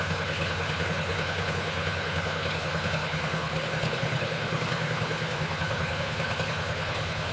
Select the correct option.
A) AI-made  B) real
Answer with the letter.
A